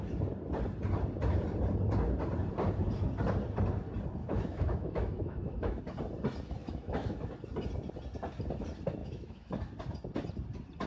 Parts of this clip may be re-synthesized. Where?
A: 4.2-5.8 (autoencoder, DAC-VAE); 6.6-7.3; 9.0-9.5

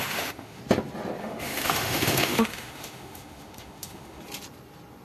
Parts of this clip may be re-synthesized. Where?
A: 0.0-0.6 (autoencoder, DAC-VAE); 1.2-4.2

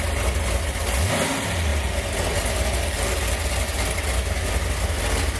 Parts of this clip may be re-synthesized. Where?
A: none

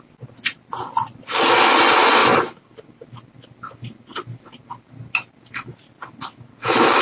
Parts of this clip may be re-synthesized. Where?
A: none